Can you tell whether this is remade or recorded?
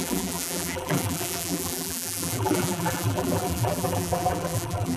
remade